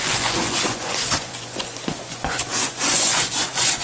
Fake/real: fake